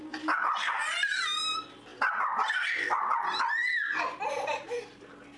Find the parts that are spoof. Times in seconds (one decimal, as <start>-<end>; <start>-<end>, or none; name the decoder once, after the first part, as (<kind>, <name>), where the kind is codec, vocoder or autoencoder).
none